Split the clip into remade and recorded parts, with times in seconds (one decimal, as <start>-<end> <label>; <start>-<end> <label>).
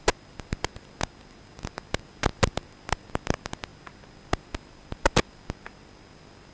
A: 0.0-6.5 recorded